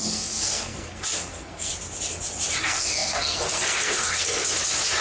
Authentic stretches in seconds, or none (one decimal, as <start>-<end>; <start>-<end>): 1.7-2.6; 4.4-5.0